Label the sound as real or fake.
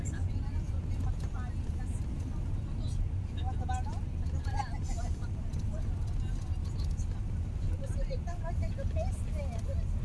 real